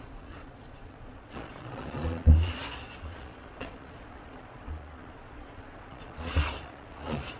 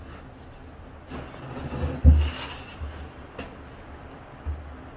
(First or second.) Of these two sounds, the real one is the second